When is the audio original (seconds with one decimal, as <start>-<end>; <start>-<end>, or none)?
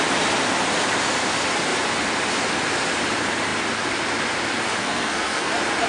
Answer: 0.0-4.8; 5.5-5.9